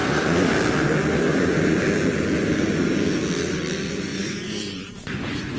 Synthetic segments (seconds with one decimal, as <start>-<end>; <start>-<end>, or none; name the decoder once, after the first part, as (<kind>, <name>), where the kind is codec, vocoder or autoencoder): 0.0-0.5 (vocoder, Vocos); 1.3-1.8; 4.1-5.6